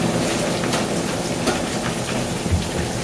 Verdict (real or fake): real